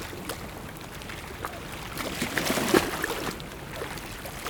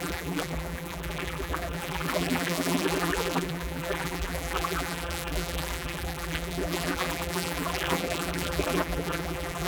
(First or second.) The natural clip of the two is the first